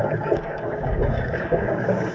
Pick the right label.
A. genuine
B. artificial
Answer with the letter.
B